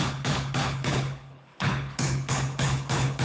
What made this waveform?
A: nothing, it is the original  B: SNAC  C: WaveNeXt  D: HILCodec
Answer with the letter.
D